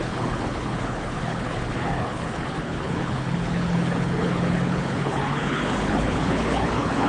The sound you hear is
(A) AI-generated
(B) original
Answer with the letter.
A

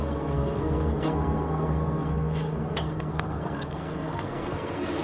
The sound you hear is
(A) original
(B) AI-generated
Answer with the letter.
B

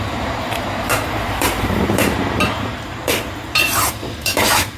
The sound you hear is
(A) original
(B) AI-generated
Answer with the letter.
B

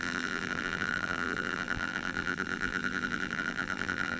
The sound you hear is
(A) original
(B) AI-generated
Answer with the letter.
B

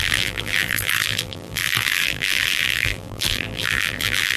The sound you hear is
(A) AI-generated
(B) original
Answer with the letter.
A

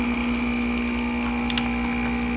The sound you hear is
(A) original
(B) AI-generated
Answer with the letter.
A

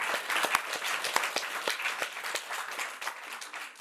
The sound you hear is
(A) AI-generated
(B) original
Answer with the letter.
B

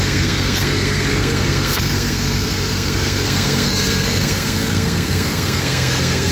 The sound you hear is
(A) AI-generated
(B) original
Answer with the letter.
A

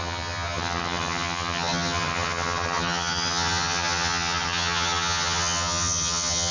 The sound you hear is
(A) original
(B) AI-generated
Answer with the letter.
B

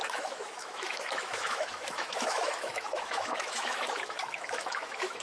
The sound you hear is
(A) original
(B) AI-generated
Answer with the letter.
B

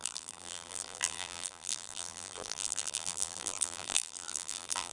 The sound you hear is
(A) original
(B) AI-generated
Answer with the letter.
B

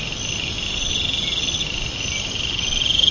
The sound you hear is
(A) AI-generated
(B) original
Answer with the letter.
B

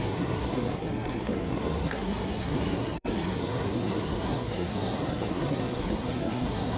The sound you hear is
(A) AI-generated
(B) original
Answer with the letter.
A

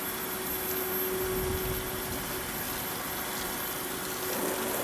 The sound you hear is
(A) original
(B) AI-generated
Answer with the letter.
A